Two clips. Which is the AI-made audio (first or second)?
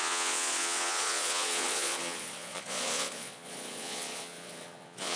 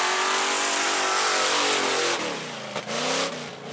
first